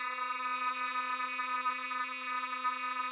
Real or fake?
fake